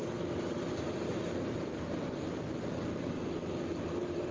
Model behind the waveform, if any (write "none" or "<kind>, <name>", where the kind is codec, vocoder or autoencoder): vocoder, BigVGAN v2